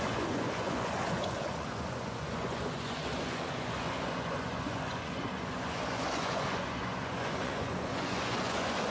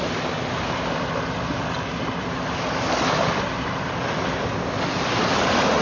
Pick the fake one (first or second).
first